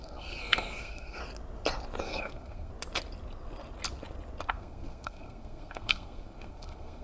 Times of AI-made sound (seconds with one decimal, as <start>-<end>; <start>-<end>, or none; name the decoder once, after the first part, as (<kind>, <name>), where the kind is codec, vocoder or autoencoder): 0.0-1.2 (codec, SNAC); 2.0-2.7; 4.5-7.0